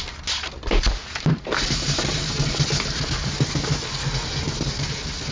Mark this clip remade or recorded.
recorded